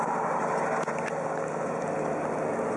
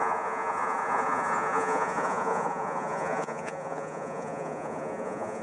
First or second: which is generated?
second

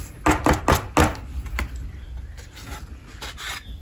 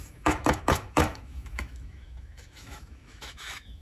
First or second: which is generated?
second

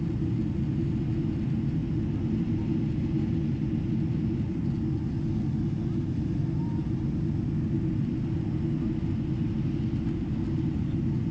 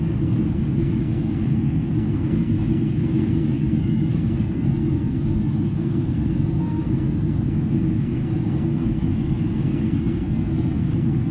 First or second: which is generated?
second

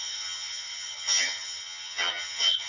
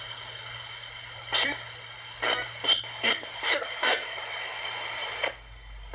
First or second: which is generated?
first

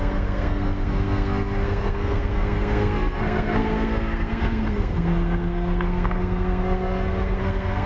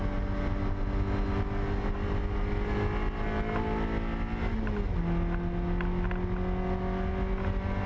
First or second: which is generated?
first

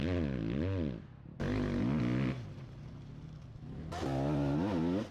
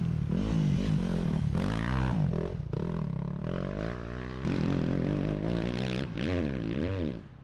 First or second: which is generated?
second